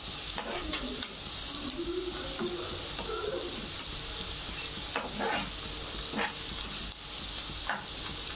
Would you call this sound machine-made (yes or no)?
no